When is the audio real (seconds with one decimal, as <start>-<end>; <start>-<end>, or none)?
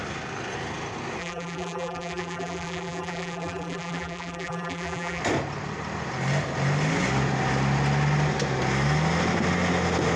0.0-1.2; 5.2-10.2